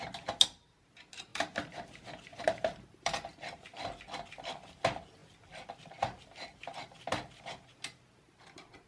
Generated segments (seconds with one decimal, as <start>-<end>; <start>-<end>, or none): 1.3-1.8; 2.3-3.3